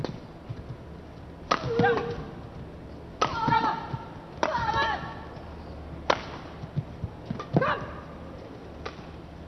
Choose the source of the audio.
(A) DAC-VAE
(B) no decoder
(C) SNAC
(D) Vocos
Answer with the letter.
B